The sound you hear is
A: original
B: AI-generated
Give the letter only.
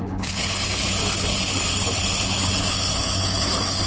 B